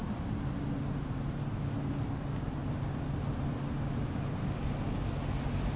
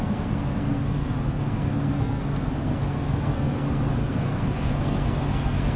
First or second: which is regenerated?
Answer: second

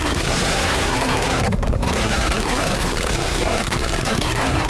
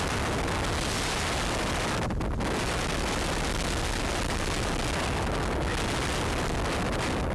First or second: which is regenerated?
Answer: first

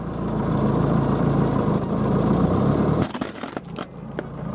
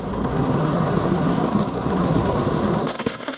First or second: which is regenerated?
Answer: second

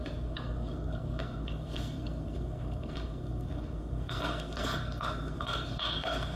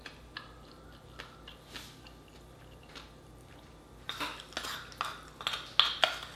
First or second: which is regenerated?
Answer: first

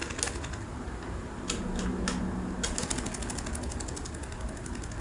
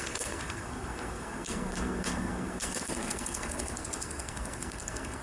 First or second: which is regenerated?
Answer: second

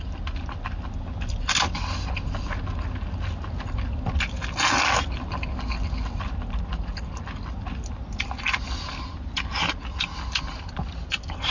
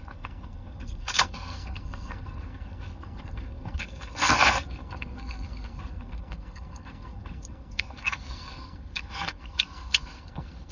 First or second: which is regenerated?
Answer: second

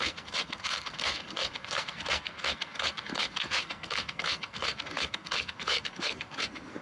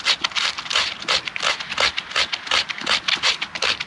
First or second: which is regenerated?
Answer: first